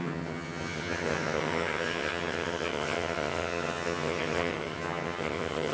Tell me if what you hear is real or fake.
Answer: fake